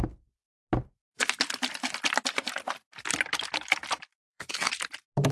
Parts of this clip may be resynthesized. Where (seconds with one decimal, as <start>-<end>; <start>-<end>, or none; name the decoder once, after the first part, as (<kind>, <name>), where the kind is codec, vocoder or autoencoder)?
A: 4.1-4.7 (codec, SNAC)